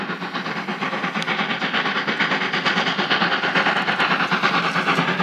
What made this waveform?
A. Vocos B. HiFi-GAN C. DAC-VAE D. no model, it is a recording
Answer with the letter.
D